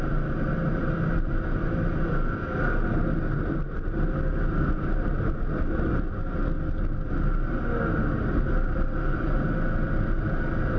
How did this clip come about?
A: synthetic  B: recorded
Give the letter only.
B